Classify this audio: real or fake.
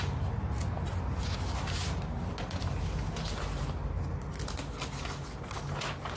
real